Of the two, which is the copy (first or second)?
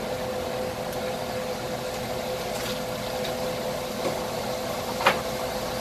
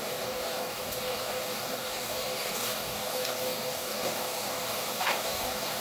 second